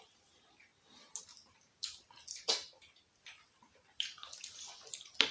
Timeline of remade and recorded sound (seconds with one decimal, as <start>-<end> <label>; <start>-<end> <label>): 0.0-5.3 recorded